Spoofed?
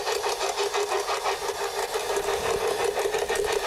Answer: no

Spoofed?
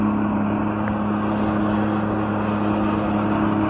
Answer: no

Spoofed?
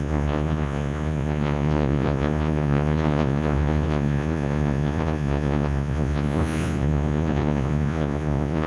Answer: yes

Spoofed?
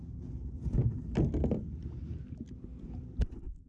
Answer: no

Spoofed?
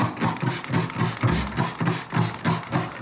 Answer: no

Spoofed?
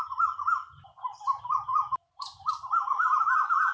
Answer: yes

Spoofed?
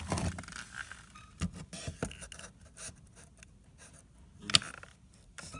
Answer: no